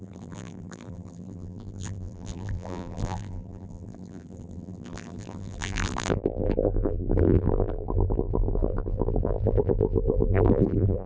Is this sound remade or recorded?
remade